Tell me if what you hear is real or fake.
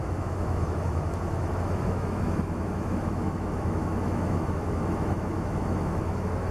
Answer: fake